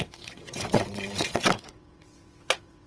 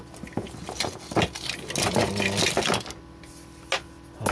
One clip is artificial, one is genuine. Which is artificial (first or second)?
first